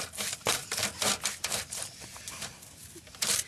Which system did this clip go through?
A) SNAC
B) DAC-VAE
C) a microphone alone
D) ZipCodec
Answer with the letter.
C